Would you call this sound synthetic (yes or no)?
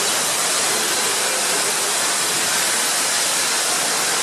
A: no